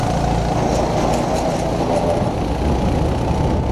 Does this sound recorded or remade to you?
recorded